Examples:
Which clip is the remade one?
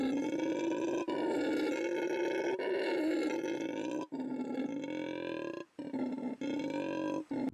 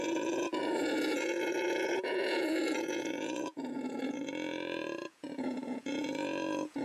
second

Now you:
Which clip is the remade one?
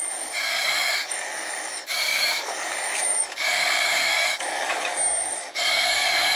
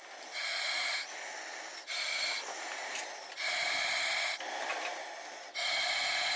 first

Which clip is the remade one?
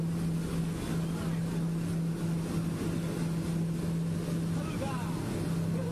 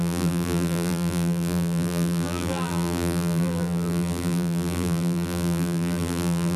second